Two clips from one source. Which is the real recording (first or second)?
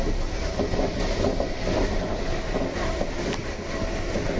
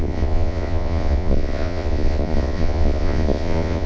first